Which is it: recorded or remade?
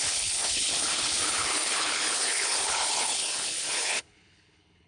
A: remade